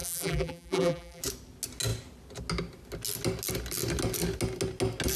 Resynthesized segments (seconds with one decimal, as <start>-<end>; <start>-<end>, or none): 0.0-1.2